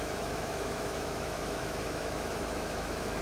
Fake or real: fake